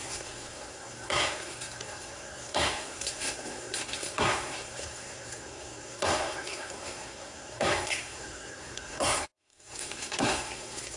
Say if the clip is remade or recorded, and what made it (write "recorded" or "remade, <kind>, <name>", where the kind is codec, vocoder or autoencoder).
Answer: remade, codec, SNAC